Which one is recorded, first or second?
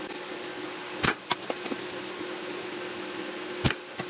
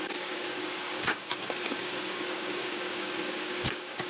first